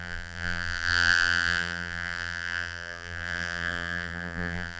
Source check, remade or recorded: remade